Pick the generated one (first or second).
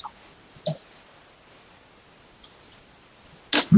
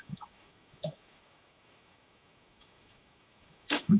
second